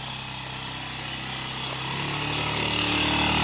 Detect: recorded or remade recorded